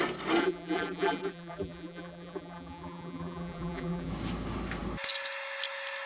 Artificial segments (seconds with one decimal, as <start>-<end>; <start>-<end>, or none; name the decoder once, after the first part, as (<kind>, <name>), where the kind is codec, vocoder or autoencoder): 0.4-4.1 (vocoder, BigVGAN v2)